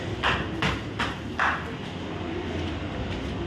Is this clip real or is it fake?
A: real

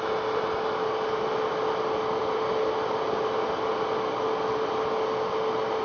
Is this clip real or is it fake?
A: real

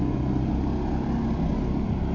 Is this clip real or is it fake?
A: real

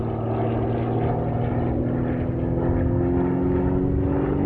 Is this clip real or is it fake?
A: real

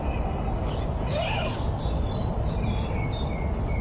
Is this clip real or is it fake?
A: real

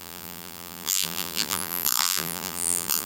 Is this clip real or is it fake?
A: fake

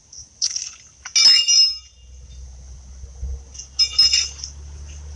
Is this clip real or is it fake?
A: real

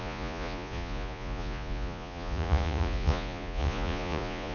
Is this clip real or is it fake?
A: fake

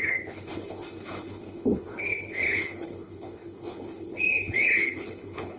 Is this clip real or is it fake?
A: fake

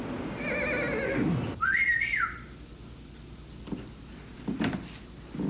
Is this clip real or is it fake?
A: real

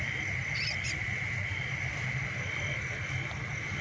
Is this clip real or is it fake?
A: real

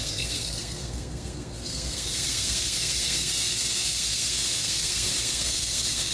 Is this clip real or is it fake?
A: fake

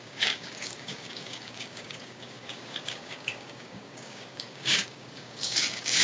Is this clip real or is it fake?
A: fake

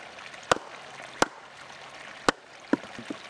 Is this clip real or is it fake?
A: real